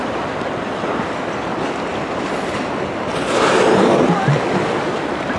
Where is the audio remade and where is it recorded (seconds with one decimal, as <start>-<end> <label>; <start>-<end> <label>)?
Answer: 0.0-5.4 recorded